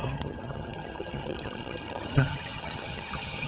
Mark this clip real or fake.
fake